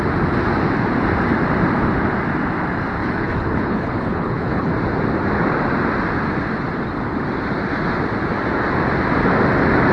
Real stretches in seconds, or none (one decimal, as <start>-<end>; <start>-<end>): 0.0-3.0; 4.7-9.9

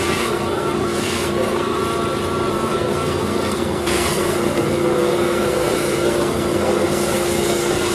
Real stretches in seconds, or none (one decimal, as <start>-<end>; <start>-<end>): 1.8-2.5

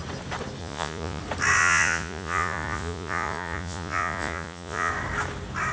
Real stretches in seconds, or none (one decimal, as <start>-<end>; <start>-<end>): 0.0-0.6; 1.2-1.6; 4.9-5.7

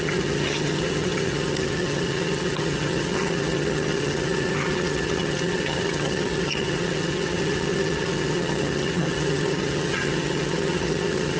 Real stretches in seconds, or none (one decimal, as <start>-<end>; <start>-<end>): none

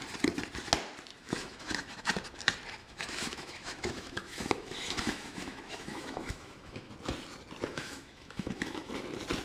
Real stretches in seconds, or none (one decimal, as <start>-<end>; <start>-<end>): 0.0-1.2; 2.1-2.8; 6.9-7.7; 8.9-9.4